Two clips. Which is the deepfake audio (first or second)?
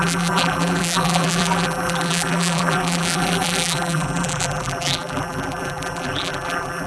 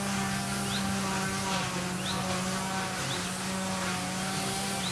first